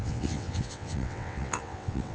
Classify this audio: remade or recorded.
remade